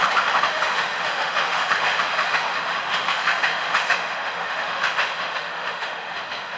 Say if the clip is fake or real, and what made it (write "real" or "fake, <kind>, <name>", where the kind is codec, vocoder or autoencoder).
fake, autoencoder, DAC-VAE